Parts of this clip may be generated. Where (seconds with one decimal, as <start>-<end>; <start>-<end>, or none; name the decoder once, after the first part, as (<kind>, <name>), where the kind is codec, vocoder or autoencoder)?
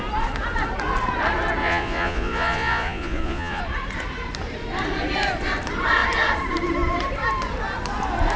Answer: 1.6-3.6 (vocoder, Vocos)